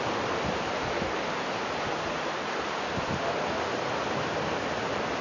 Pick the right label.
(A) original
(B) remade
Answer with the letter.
A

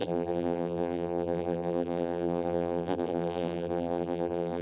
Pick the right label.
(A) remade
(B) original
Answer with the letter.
A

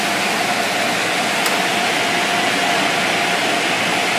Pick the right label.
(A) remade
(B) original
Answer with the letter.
B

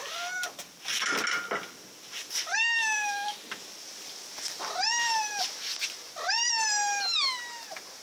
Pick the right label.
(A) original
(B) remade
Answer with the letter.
A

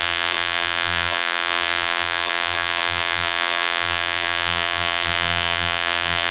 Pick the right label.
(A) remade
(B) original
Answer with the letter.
A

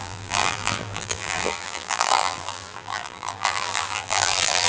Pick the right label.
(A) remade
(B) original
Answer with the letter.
A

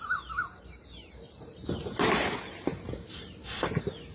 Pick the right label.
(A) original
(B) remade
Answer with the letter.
A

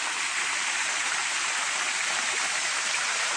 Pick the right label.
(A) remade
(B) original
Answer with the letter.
A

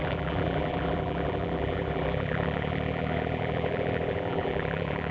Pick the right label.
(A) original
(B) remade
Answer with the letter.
B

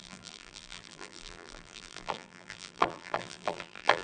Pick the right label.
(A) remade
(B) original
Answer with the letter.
A